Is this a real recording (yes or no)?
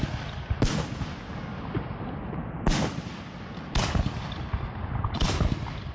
yes